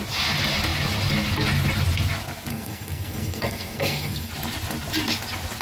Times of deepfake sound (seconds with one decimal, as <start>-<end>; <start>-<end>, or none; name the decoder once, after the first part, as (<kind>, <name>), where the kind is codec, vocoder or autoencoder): 2.5-4.3 (codec, SNAC)